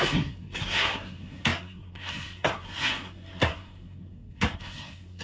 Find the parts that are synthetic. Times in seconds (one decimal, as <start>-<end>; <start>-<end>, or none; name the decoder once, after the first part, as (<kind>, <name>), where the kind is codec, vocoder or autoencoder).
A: 0.0-5.2 (codec, SNAC)